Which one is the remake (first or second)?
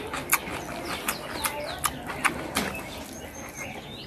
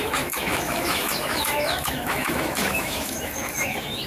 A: second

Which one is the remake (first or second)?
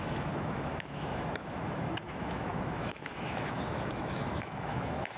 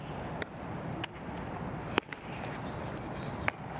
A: first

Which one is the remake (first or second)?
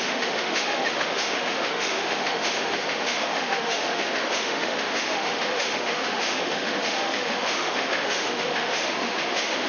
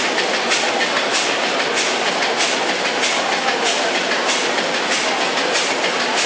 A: first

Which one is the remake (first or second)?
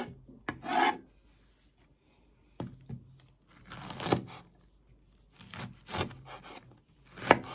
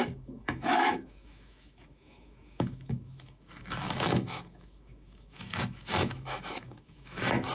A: second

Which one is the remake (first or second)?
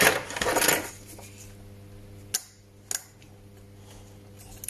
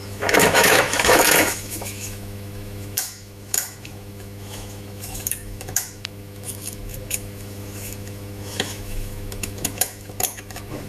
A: second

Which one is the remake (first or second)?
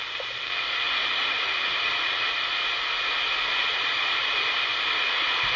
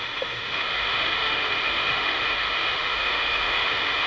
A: second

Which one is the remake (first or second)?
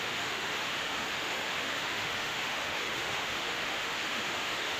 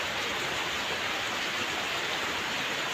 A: first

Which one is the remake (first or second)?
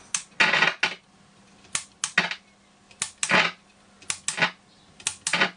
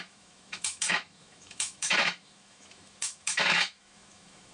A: second